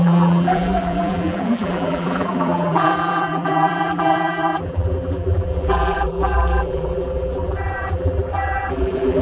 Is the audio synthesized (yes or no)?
yes